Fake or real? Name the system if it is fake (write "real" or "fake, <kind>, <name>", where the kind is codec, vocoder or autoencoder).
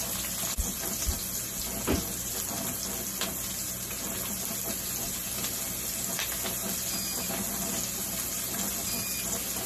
real